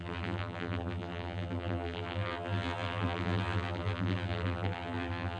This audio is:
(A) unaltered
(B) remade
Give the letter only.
B